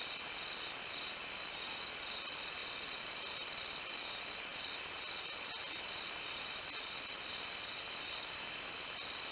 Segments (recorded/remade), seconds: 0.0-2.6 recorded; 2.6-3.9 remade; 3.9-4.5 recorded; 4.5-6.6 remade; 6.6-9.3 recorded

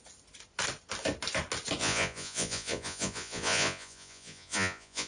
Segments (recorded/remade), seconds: 0.0-1.8 recorded; 1.8-5.1 remade

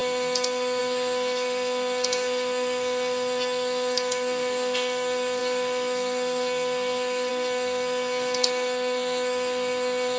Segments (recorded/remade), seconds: 0.0-10.2 remade

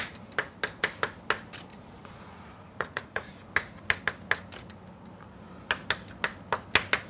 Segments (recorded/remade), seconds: 0.0-1.7 recorded; 1.7-3.5 remade; 3.5-7.1 recorded

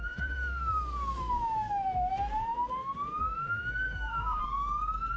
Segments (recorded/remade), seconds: 0.0-4.4 remade; 4.4-5.2 recorded

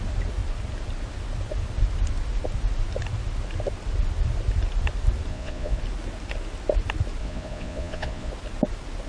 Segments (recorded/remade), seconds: 0.0-5.3 recorded; 5.3-5.8 remade; 5.8-7.2 recorded; 7.2-8.3 remade; 8.3-9.1 recorded

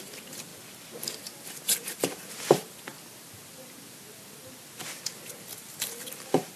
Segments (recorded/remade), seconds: 0.0-0.5 remade; 0.5-1.2 recorded; 1.2-2.9 remade; 2.9-5.1 recorded; 5.1-6.6 remade